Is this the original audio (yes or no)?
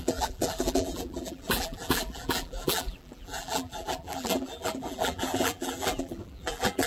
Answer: no